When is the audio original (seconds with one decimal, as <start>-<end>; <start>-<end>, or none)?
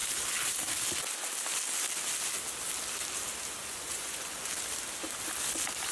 0.0-3.6; 4.5-5.9